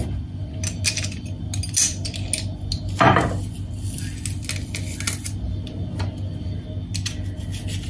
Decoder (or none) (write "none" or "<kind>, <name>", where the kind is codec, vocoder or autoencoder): none